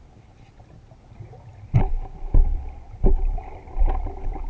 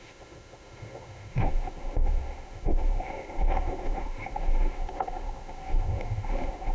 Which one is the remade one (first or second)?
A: second